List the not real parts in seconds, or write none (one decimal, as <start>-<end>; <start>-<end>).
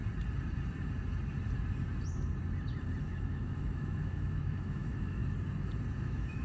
3.0-5.2; 6.0-6.4